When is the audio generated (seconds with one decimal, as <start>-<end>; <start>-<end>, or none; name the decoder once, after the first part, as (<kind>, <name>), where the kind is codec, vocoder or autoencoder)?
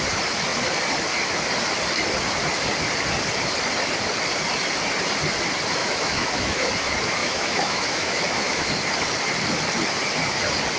5.8-6.7 (autoencoder, DAC-VAE); 7.2-8.7